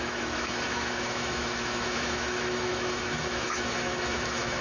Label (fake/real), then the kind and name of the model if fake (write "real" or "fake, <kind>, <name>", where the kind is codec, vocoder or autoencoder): fake, autoencoder, DAC-VAE